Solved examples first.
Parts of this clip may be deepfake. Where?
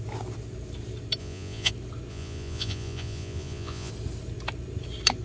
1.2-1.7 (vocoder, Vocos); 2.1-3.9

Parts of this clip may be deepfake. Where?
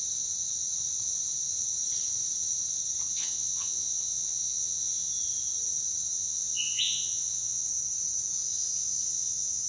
3.1-5.1 (vocoder, Vocos); 6.1-7.7; 8.5-9.7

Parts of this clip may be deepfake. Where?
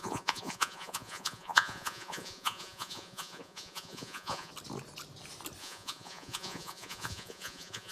0.0-4.5 (vocoder, Vocos); 5.6-7.9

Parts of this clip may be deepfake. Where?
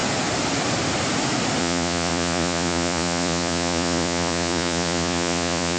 1.6-5.8 (vocoder, Vocos)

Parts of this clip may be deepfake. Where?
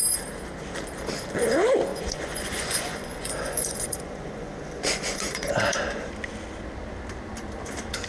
1.9-6.1 (vocoder, Vocos)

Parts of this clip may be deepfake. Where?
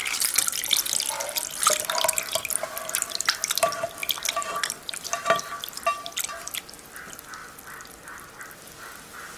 none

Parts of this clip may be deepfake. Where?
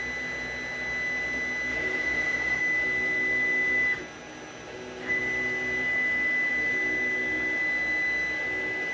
1.7-2.6 (vocoder, Vocos)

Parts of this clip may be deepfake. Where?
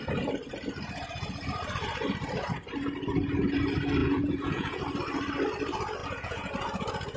4.0-4.8 (vocoder, Vocos); 6.0-6.5